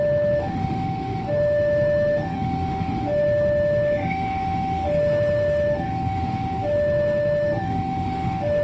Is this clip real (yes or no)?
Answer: no